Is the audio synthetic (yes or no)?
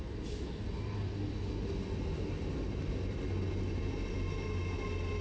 no